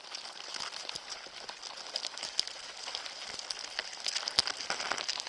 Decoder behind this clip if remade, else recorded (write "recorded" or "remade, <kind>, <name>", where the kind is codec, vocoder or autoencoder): recorded